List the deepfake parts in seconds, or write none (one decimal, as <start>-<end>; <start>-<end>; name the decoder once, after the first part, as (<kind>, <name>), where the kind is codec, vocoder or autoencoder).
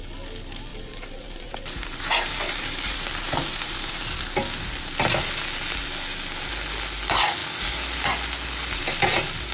0.7-4.0 (vocoder, BigVGAN v2)